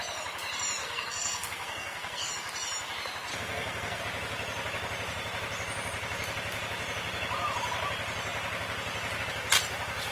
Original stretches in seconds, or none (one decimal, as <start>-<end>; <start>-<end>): 0.0-0.8; 2.3-3.3; 4.0-10.1